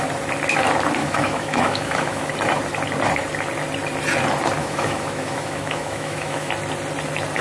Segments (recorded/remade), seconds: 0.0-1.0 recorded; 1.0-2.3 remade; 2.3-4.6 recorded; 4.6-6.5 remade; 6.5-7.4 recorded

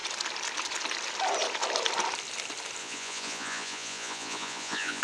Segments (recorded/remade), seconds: 0.0-2.8 recorded; 2.8-5.0 remade

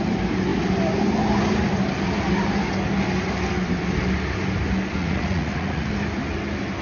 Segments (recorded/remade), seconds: 0.0-5.0 recorded; 5.0-5.9 remade; 5.9-6.8 recorded